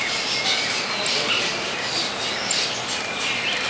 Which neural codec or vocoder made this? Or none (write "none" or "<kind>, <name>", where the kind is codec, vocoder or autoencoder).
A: none